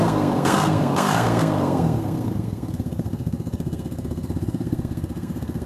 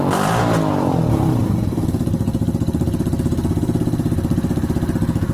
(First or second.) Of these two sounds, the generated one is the first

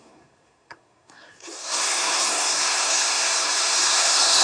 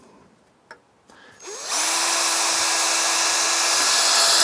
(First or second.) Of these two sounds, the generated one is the first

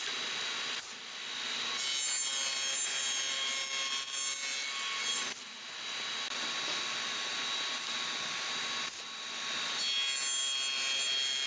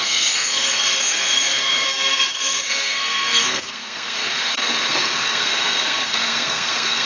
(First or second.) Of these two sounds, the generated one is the second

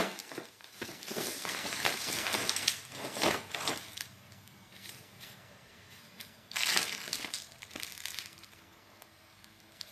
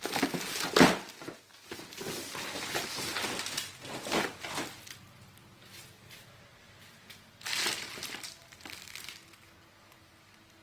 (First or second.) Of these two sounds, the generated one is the first